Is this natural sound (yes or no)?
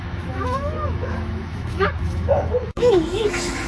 no